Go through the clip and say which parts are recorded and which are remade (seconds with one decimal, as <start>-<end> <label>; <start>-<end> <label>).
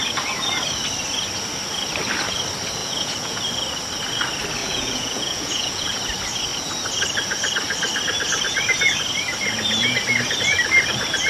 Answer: 0.0-2.8 recorded; 2.8-3.4 remade; 3.4-4.6 recorded; 4.6-6.0 remade; 6.0-11.3 recorded